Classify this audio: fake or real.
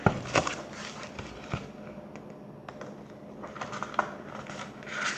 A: real